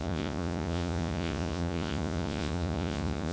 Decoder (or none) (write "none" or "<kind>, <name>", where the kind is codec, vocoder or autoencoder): vocoder, Vocos